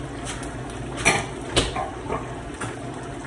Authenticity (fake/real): real